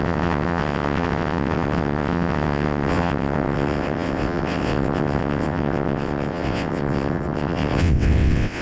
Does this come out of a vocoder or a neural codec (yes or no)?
yes